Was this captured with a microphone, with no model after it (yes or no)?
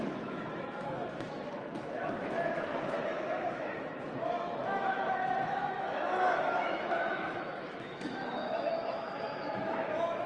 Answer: no